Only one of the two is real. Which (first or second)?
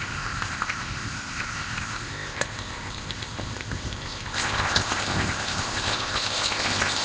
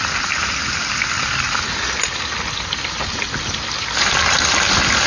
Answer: second